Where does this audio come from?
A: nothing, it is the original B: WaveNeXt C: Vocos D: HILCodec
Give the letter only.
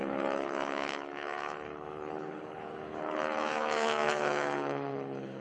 D